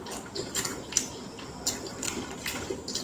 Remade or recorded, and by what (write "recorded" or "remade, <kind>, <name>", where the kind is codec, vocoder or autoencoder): recorded